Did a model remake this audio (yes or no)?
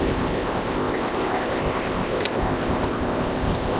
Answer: yes